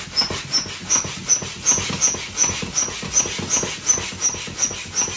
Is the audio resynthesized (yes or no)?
no